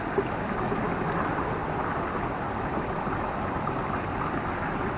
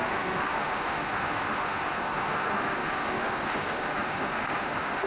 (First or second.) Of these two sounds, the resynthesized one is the second